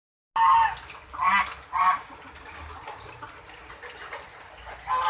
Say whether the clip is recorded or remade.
recorded